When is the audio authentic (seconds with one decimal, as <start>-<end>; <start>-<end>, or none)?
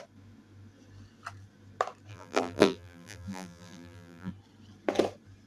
0.0-2.1; 4.3-5.5